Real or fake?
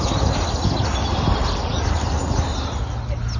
real